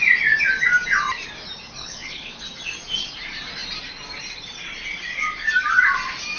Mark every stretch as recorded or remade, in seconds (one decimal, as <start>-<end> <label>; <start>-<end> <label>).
0.0-1.8 recorded; 1.8-2.4 remade; 2.4-6.4 recorded